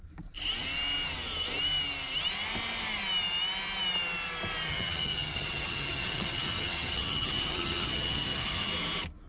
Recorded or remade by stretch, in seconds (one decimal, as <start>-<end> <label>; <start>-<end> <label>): 0.0-4.7 recorded; 4.7-8.7 remade; 8.7-9.3 recorded